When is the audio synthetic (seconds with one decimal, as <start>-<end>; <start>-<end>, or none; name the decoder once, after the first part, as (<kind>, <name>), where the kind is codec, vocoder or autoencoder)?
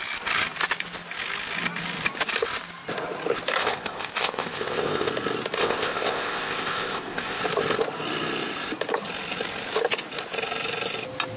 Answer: 3.6-5.1 (codec, ZipCodec); 5.6-7.4